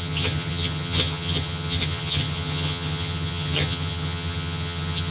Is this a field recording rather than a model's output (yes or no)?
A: no